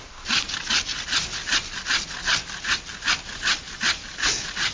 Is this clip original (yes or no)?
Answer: yes